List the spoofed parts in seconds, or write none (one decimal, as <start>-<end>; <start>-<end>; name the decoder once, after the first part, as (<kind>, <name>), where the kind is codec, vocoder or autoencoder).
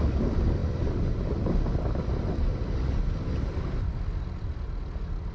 0.6-2.7 (vocoder, BigVGAN v2)